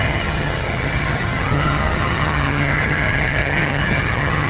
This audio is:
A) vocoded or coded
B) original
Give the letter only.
A